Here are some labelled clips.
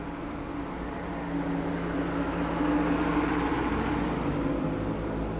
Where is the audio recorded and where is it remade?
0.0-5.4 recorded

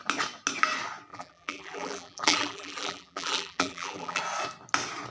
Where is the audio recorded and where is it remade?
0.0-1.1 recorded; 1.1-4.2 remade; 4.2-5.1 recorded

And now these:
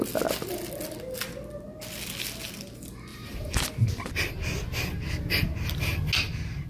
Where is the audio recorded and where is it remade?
0.0-3.1 recorded; 3.1-3.7 remade; 3.7-6.7 recorded

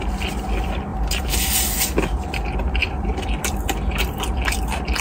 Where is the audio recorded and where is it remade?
0.0-0.9 recorded; 0.9-1.4 remade; 1.4-2.8 recorded; 2.8-5.0 remade

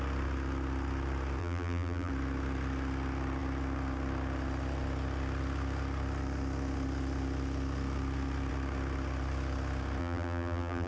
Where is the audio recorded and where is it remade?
0.0-1.4 recorded; 1.4-2.1 remade; 2.1-10.0 recorded; 10.0-10.9 remade

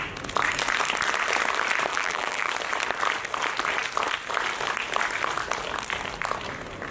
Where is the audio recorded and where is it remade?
0.0-1.9 recorded; 1.9-2.5 remade; 2.5-6.9 recorded

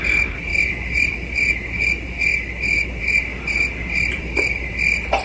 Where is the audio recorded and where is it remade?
0.0-0.5 recorded; 0.5-1.5 remade; 1.5-4.1 recorded; 4.1-4.7 remade; 4.7-5.2 recorded

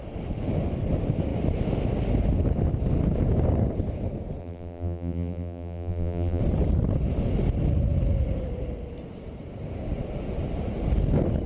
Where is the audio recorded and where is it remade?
0.0-4.4 recorded; 4.4-6.4 remade; 6.4-11.5 recorded